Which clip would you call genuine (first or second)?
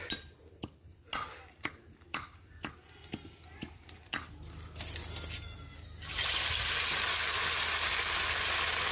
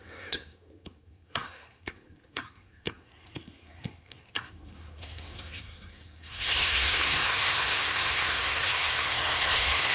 first